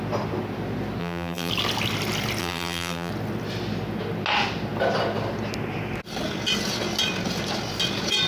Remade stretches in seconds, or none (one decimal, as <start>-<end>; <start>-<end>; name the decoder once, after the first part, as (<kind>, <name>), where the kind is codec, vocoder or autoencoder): 1.0-1.5 (vocoder, BigVGAN v2); 2.4-3.1

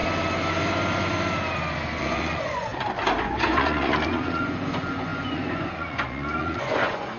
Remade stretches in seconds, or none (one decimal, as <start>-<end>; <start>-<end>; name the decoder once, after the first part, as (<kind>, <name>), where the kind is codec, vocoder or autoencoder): 2.0-2.7 (vocoder, Vocos); 3.2-7.2

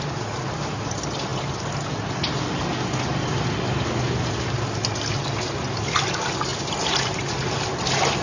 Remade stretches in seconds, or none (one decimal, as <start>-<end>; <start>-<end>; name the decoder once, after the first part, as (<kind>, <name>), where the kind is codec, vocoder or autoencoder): none